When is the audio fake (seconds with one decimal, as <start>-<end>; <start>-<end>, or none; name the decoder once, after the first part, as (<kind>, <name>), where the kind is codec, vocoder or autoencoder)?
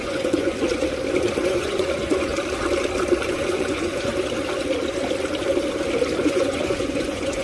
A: 0.0-0.7 (vocoder, Vocos); 1.4-2.3; 3.3-4.1; 6.2-7.4